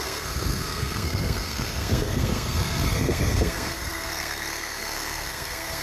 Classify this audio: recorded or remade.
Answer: remade